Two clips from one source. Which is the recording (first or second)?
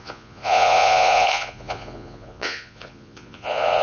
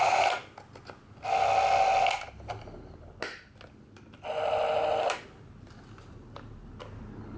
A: second